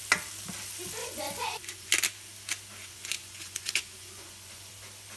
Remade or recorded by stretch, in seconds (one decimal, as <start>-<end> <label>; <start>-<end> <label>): 0.0-1.0 recorded; 1.0-1.9 remade; 1.9-2.8 recorded; 2.8-4.7 remade; 4.7-5.2 recorded